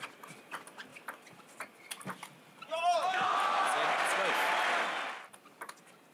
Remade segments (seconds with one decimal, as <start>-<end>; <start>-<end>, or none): 0.9-4.6